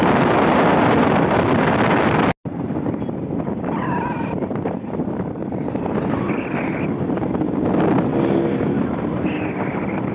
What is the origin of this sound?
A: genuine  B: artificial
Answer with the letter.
A